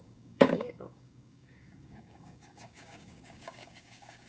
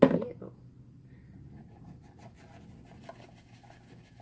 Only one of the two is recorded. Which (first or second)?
second